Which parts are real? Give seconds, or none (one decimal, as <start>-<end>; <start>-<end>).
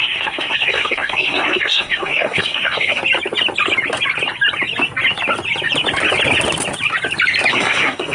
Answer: 3.0-7.5